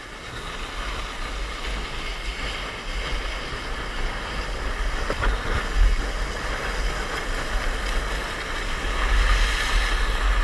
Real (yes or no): yes